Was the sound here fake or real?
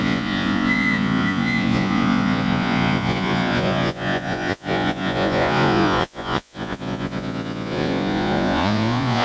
fake